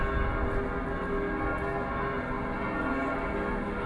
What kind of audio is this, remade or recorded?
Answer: recorded